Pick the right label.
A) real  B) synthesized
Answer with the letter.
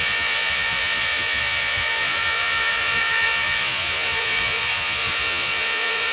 B